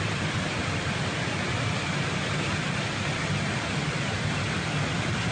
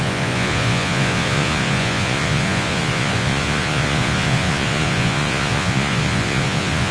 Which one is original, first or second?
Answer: first